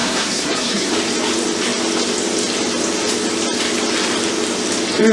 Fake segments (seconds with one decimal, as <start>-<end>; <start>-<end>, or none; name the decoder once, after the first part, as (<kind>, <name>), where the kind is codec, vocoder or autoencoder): 0.0-0.9 (codec, SNAC)